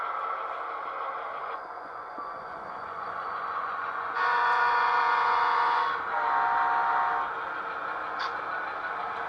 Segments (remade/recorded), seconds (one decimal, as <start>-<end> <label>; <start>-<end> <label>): 0.0-1.4 recorded; 1.4-5.9 remade; 5.9-7.8 recorded; 7.8-8.4 remade; 8.4-9.3 recorded